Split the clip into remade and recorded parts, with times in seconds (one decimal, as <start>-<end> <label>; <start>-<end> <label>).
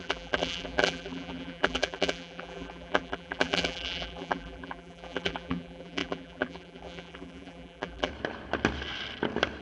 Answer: 0.0-8.1 remade; 8.1-9.6 recorded